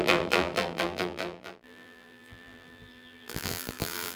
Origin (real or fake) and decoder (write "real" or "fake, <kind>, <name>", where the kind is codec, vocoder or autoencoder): fake, vocoder, BigVGAN v2